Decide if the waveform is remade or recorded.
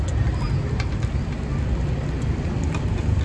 recorded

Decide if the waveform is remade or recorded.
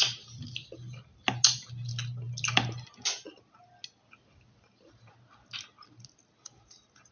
recorded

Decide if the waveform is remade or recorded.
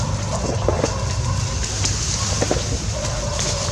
recorded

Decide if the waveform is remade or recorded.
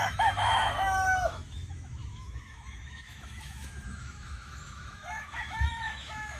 remade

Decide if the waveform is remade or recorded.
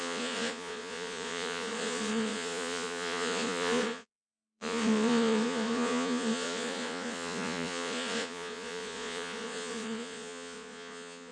remade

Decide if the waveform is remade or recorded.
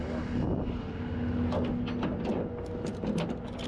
recorded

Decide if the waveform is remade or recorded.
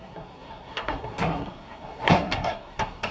remade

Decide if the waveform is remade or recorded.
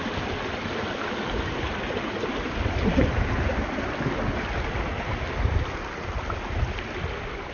recorded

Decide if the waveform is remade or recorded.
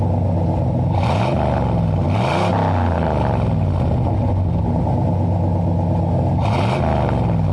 recorded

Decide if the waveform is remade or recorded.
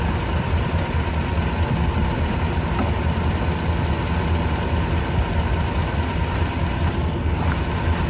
recorded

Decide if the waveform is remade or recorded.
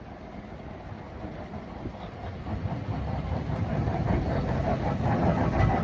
recorded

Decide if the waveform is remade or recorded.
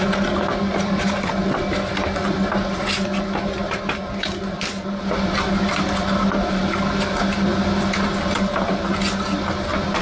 recorded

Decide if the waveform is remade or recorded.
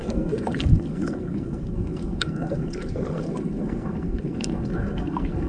remade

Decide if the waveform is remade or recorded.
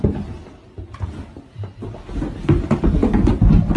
recorded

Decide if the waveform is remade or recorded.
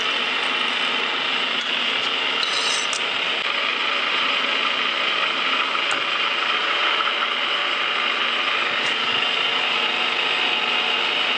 recorded